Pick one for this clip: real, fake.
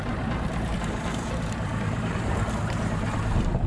fake